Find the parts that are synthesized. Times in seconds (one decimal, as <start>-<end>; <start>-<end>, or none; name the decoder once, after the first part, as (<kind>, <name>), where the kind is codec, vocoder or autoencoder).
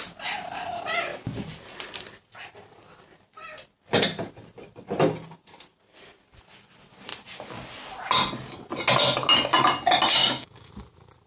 10.2-10.7 (codec, DAC)